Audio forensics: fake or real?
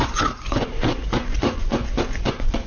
fake